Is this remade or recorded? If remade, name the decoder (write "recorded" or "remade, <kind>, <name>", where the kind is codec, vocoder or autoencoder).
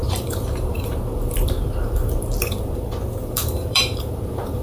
remade, vocoder, BigVGAN v2